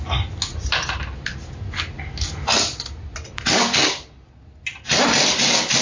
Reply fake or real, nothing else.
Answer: real